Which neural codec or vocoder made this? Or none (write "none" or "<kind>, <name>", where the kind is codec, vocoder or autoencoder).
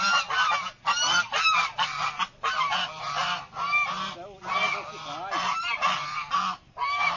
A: none